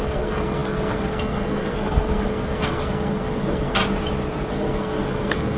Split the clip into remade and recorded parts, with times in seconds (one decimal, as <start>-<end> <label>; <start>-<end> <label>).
0.0-3.8 remade; 3.8-4.5 recorded; 4.5-5.6 remade